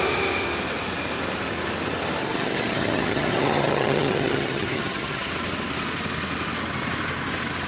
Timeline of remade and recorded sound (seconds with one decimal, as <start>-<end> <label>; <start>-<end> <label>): 0.0-2.2 recorded; 2.2-5.3 remade; 5.3-7.7 recorded